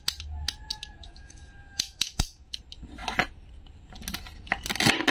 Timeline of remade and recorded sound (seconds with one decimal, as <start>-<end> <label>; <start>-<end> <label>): 0.0-0.7 recorded; 0.7-2.6 remade; 2.6-5.1 recorded